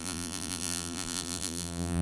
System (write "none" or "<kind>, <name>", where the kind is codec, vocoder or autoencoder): vocoder, BigVGAN v2